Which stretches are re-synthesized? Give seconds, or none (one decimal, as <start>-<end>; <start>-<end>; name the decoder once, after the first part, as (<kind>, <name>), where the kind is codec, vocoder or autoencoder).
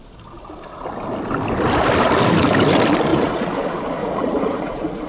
3.1-3.6 (vocoder, Vocos); 4.0-5.1